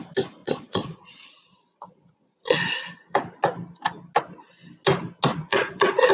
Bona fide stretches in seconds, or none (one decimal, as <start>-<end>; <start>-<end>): 0.0-0.4; 2.6-5.3